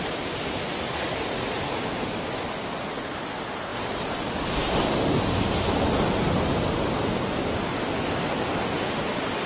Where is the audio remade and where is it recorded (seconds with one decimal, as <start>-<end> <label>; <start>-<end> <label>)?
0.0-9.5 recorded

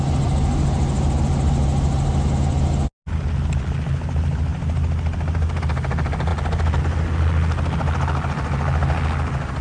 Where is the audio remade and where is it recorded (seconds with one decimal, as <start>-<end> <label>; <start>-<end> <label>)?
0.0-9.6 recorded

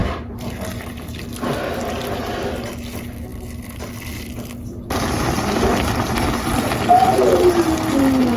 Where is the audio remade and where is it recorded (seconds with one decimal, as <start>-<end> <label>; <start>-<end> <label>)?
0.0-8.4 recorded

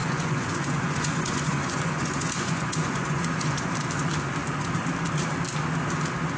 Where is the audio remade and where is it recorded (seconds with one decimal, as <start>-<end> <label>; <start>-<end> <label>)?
0.0-3.7 remade; 3.7-6.4 recorded

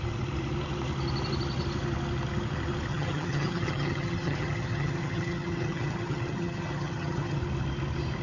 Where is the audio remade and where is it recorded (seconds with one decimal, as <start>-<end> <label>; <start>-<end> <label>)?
0.0-2.9 recorded; 2.9-7.4 remade; 7.4-8.2 recorded

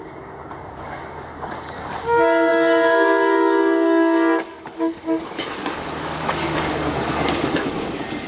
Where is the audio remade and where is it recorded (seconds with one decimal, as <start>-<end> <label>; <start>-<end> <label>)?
0.0-8.3 remade

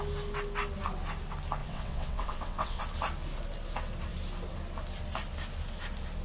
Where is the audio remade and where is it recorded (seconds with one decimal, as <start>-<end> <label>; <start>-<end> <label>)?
0.0-1.6 recorded; 1.6-2.8 remade; 2.8-6.2 recorded